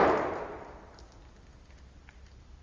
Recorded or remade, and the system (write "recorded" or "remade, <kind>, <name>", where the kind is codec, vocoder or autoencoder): recorded